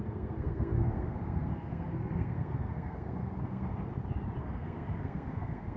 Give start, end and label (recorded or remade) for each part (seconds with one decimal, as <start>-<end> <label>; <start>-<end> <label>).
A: 0.0-3.9 remade; 3.9-4.4 recorded; 4.4-5.8 remade